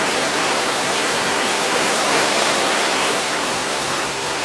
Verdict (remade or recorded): remade